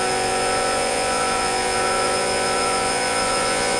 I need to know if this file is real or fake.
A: fake